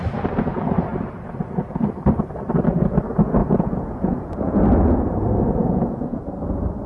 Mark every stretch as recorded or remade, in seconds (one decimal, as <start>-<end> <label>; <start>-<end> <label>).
0.0-3.4 recorded; 3.4-4.6 remade; 4.6-5.6 recorded; 5.6-6.2 remade; 6.2-6.9 recorded